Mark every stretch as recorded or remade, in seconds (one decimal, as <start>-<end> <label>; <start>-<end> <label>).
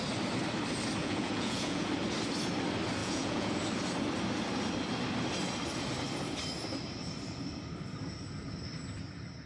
0.0-1.0 recorded; 1.0-1.9 remade; 1.9-3.0 recorded; 3.0-3.5 remade; 3.5-9.5 recorded